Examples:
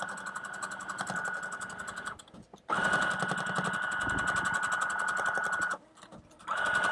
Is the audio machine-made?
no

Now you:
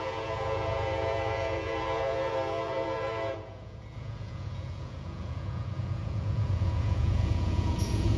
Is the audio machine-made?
yes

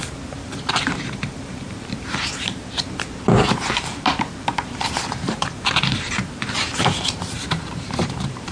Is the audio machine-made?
yes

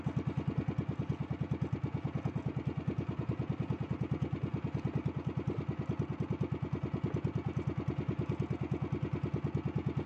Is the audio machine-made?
no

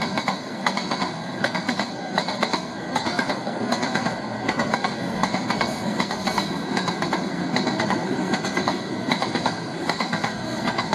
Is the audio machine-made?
yes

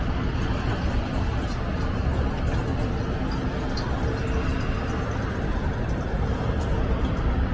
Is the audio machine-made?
no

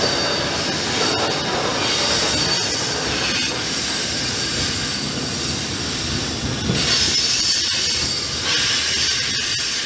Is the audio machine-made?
no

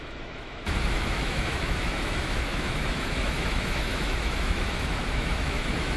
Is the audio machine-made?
yes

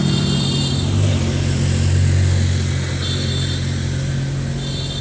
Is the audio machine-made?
no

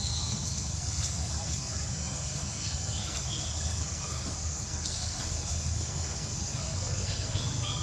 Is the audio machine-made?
yes